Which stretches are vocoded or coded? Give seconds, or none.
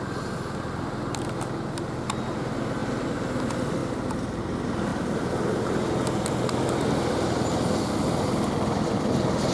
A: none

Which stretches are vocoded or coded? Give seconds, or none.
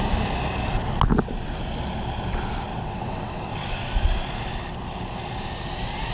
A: 2.7-3.9 (vocoder, WaveNeXt)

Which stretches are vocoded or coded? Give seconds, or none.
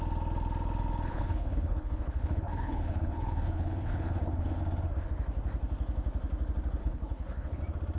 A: 1.1-4.6 (codec, HILCodec); 6.8-7.6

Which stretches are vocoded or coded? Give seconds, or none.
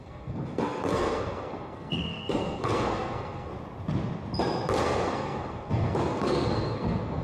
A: 0.0-3.5 (codec, SNAC); 4.8-7.2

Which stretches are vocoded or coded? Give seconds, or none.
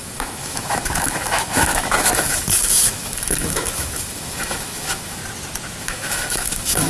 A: 0.0-5.2 (autoencoder, DAC-VAE); 5.8-6.9